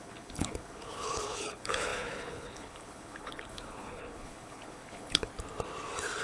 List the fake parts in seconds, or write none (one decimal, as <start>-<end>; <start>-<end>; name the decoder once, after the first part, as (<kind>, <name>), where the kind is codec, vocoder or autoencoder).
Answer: 0.0-5.3 (codec, HILCodec)